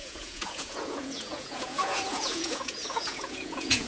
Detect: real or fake fake